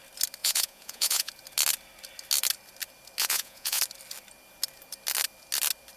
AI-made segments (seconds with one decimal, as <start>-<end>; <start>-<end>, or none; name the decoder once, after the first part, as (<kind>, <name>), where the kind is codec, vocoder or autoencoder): 0.4-1.3 (vocoder, Vocos); 3.2-3.8